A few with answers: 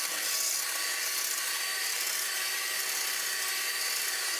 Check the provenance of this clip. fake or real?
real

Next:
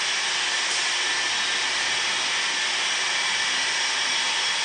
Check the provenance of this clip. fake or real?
real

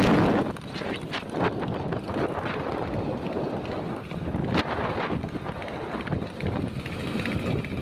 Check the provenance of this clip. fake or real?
real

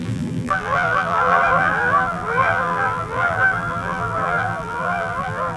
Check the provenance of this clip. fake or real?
fake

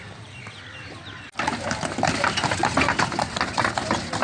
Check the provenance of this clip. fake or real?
real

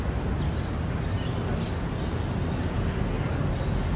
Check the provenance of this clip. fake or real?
real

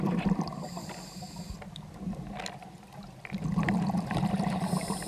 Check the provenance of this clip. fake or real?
real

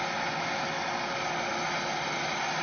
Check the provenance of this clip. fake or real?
real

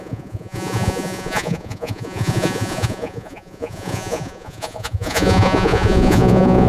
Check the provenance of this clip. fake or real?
fake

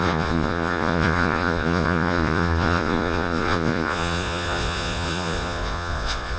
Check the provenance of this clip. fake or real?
fake